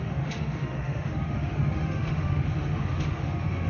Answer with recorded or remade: remade